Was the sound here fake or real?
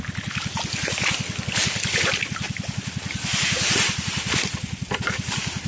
real